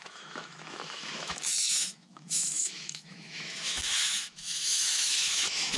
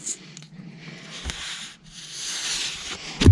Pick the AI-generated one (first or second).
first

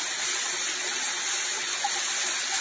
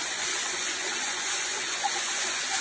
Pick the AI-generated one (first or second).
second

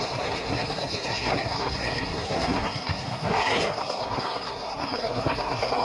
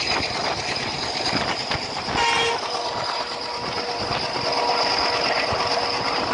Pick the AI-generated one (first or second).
first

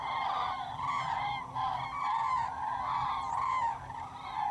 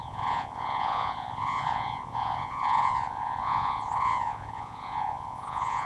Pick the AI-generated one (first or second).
second